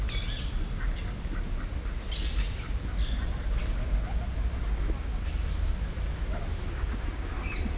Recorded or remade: recorded